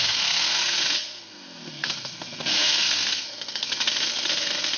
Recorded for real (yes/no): no